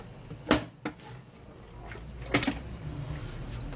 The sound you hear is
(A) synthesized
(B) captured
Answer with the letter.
B